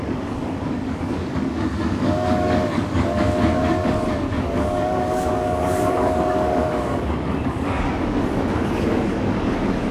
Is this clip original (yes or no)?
no